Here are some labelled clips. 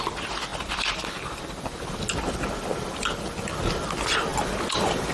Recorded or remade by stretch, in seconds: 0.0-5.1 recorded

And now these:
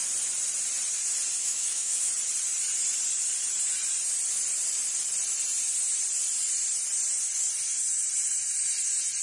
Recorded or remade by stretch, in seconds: 0.0-1.4 recorded; 1.4-2.1 remade; 2.1-9.2 recorded

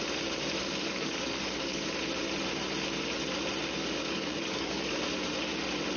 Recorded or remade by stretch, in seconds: 0.0-0.8 recorded; 0.8-1.8 remade; 1.8-4.0 recorded; 4.0-5.0 remade; 5.0-6.0 recorded

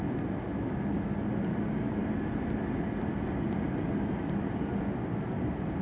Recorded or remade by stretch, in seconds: 0.0-5.8 recorded

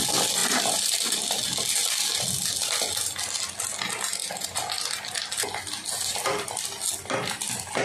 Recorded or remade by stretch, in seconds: 0.0-7.8 recorded

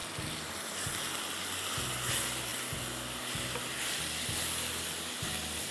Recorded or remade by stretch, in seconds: 0.0-5.7 recorded